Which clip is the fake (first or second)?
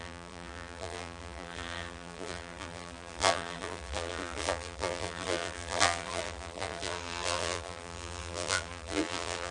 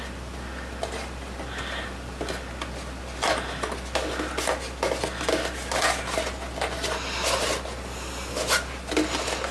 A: first